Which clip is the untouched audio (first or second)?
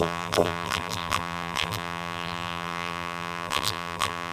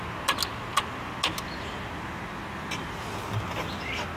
second